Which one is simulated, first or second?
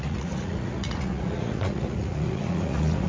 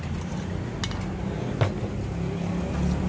first